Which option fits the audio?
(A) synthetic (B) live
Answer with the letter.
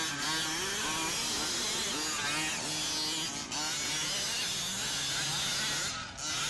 B